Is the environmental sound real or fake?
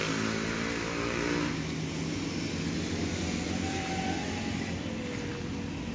real